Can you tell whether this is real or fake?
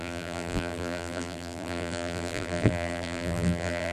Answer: fake